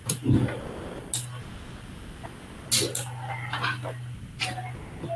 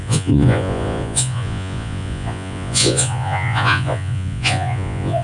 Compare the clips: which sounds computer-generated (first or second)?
second